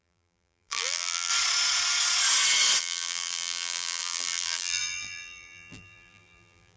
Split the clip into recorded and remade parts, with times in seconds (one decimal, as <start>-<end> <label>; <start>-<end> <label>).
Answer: 0.0-1.3 remade; 1.3-2.8 recorded; 2.8-6.8 remade